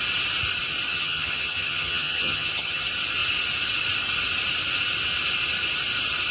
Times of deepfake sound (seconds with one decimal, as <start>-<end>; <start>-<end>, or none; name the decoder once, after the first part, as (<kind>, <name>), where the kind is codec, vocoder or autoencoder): 0.9-2.8 (vocoder, HiFi-GAN)